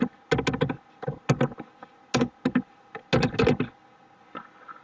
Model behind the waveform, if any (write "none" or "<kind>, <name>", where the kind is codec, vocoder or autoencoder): none